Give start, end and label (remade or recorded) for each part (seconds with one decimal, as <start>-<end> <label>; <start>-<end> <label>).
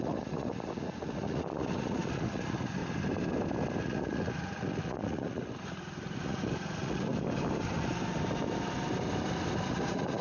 0.0-2.8 remade; 2.8-3.8 recorded; 3.8-7.1 remade; 7.1-9.7 recorded; 9.7-10.2 remade